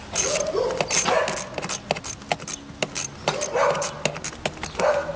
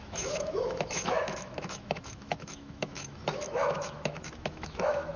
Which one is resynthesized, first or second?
second